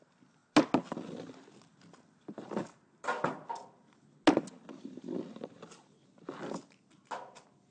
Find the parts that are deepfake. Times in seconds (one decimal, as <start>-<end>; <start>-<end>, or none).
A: none